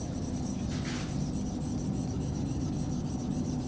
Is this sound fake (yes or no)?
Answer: no